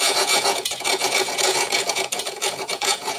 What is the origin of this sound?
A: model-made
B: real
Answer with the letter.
A